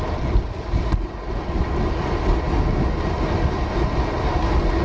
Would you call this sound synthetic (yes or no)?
no